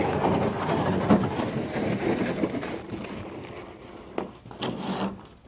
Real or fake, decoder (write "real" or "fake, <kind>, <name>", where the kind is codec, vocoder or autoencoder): real